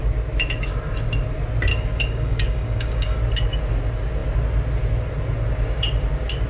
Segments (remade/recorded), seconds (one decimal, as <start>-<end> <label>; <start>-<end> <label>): 0.0-1.7 recorded; 1.7-3.2 remade; 3.2-6.5 recorded